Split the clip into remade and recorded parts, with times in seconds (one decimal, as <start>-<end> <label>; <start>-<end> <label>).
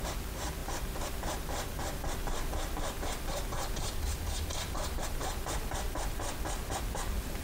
0.0-7.4 recorded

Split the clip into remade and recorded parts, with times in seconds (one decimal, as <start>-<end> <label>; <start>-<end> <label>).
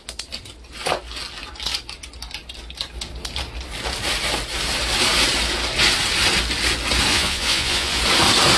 0.0-7.1 recorded; 7.1-8.0 remade; 8.0-8.6 recorded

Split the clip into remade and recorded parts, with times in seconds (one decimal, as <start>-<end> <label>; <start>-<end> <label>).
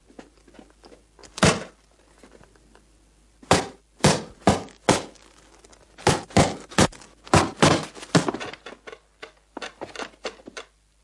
0.0-11.0 recorded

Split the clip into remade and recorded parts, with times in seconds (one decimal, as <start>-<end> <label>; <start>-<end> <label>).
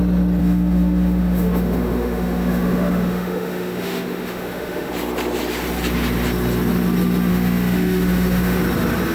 0.0-0.4 recorded; 0.4-4.9 remade; 4.9-7.3 recorded; 7.3-8.6 remade; 8.6-9.1 recorded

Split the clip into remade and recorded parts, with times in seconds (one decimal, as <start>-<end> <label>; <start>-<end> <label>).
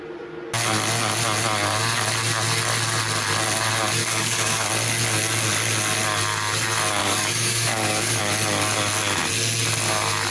0.0-4.0 recorded; 4.0-4.7 remade; 4.7-7.0 recorded; 7.0-8.2 remade; 8.2-10.3 recorded